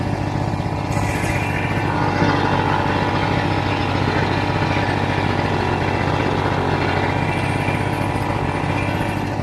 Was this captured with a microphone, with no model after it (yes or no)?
yes